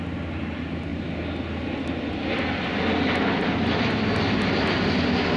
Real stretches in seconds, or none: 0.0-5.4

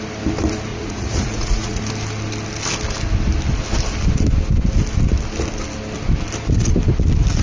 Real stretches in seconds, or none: 0.0-0.7; 1.8-7.4

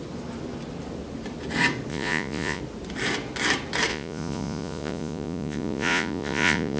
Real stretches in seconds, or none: 0.0-1.9; 2.6-3.9